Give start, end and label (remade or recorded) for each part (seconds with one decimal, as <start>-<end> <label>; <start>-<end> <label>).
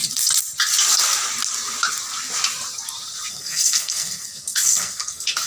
0.0-3.3 recorded; 3.3-5.5 remade